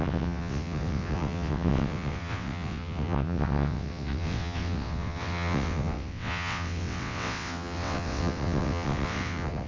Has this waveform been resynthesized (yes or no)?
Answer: yes